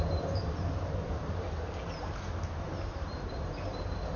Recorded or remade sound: remade